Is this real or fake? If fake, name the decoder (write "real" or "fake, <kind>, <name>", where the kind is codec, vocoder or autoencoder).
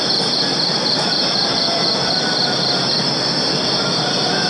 real